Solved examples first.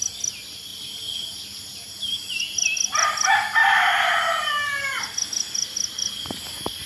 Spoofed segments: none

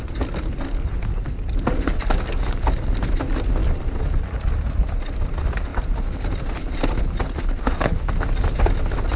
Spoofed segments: 4.8-5.3 (vocoder, BigVGAN v2)